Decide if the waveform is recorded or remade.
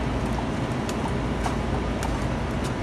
recorded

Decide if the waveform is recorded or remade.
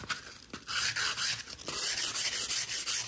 recorded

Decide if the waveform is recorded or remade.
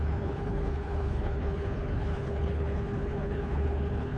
remade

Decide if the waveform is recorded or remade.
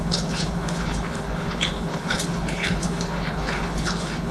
remade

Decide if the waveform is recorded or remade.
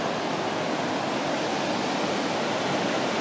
recorded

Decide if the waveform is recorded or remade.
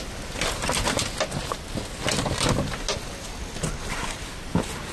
recorded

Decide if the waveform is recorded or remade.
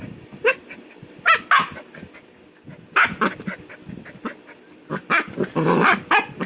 recorded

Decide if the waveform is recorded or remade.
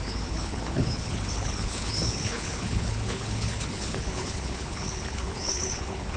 remade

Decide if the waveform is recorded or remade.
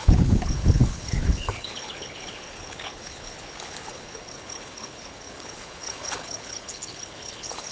remade